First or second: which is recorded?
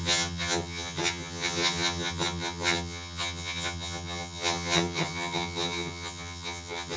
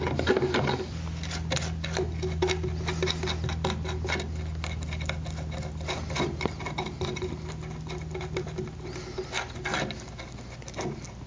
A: second